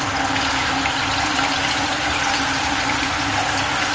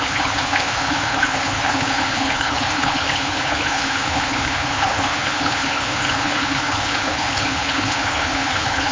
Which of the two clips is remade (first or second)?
second